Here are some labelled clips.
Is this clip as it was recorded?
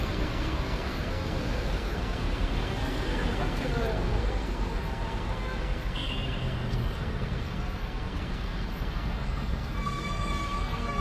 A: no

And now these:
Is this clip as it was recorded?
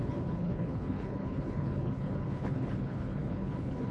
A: no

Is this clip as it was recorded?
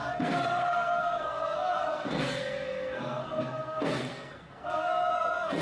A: no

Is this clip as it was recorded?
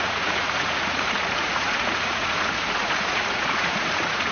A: no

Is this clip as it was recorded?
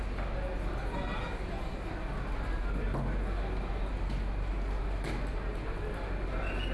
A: yes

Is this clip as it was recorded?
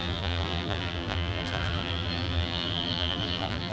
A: no